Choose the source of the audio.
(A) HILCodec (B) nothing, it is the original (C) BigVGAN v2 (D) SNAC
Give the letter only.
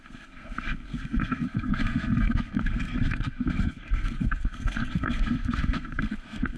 D